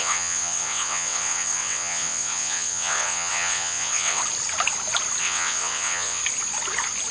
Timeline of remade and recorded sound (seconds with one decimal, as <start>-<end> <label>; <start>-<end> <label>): 0.0-4.2 remade; 4.2-5.2 recorded; 5.2-6.2 remade; 6.2-7.1 recorded